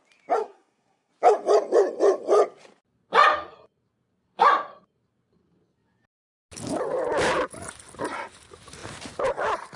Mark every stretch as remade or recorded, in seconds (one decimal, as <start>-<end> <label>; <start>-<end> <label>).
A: 0.0-0.4 recorded; 0.4-1.1 remade; 1.1-9.8 recorded